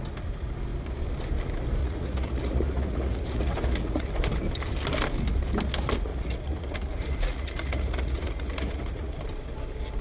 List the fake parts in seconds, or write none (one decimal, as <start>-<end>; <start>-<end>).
1.8-4.1; 6.1-9.2